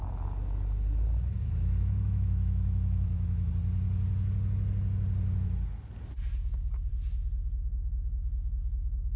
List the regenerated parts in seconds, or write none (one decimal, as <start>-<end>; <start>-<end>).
1.4-3.5